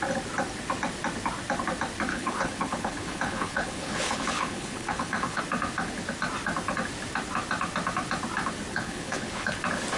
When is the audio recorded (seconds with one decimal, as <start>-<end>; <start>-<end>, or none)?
0.0-2.1; 5.4-8.7; 9.6-10.0